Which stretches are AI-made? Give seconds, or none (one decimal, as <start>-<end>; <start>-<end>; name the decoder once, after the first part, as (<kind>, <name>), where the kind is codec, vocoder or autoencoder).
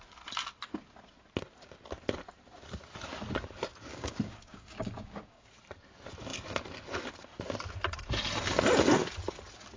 3.9-5.5 (codec, DAC)